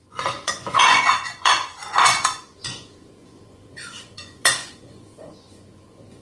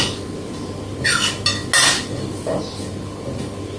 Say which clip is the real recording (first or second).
second